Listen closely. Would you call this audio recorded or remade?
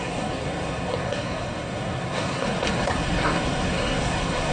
remade